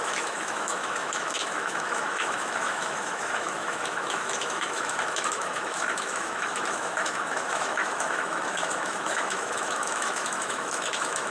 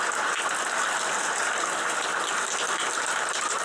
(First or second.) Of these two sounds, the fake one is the first